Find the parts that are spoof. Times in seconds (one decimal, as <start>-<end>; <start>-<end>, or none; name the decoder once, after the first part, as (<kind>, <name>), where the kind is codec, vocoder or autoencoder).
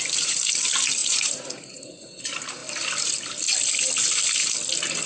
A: 1.0-2.2 (vocoder, Vocos)